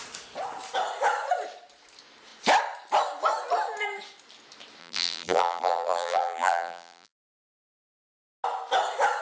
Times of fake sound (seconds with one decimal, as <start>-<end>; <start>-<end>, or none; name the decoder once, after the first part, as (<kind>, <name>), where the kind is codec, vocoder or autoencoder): 4.8-7.7 (vocoder, BigVGAN v2)